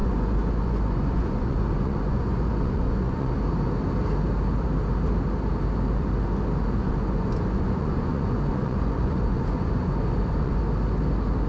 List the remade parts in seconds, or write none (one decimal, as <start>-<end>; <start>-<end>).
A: 0.0-3.3; 6.8-10.6